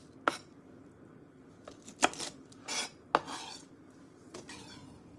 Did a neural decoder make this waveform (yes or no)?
no